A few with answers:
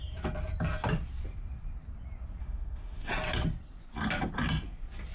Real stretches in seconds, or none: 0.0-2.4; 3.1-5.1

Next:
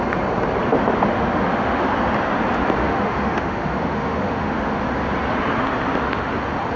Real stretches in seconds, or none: 0.0-1.1; 1.8-2.8; 4.8-6.8

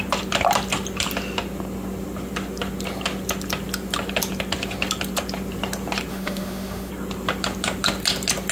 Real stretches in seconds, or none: 0.0-6.1; 6.9-8.5

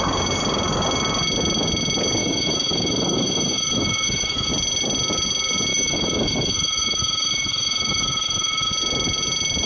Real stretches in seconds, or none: 0.0-2.2; 4.5-5.7; 8.7-9.7

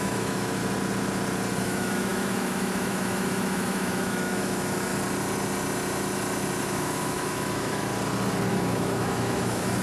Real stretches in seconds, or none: 0.6-1.6; 4.9-6.6; 7.9-8.5